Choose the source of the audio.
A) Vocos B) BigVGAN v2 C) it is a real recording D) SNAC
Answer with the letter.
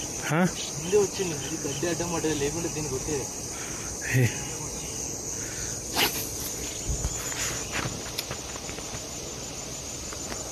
C